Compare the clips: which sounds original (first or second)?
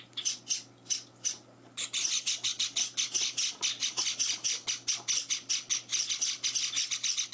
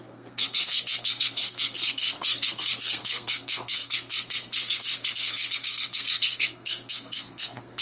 first